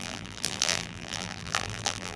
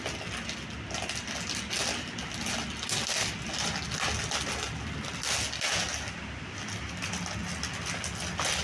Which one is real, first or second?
second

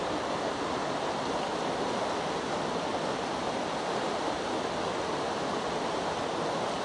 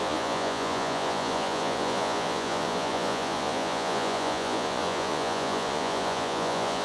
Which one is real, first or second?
first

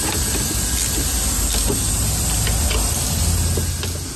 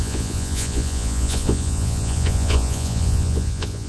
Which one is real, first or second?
first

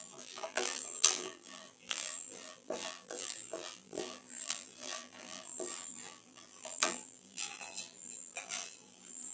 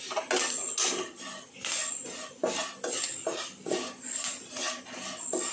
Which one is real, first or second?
second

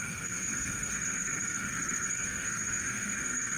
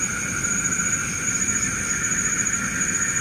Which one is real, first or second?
second